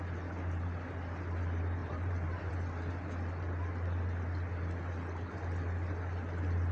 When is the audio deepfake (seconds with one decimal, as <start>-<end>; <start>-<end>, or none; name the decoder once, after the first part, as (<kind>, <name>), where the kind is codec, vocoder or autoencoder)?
1.8-2.5 (vocoder, BigVGAN v2)